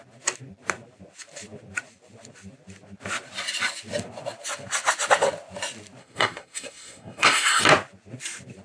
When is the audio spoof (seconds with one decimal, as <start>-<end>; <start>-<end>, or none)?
6.0-7.6